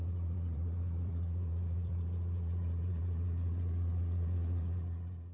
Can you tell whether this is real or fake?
fake